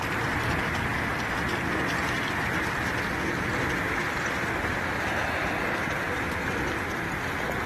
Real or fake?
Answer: fake